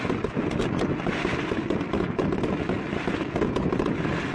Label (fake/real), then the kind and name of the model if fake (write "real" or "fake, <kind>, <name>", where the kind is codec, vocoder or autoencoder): real